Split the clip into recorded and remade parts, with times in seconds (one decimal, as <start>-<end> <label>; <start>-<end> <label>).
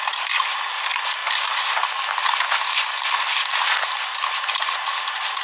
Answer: 0.0-5.4 recorded